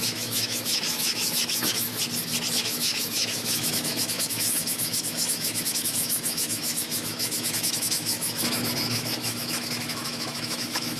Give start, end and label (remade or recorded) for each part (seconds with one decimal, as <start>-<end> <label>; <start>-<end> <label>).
0.0-1.9 remade; 1.9-2.6 recorded; 2.6-11.0 remade